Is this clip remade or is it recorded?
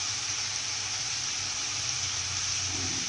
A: recorded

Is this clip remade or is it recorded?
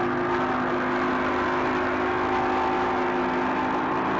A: recorded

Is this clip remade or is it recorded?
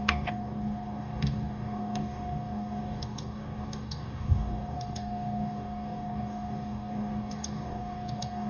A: remade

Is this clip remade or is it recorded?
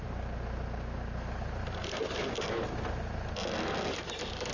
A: recorded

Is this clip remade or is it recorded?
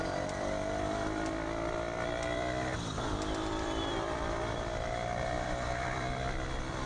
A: remade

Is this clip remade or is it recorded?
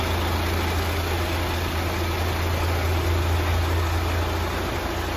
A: recorded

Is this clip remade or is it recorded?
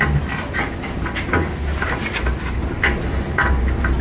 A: recorded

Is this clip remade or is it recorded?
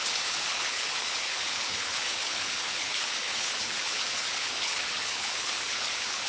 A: remade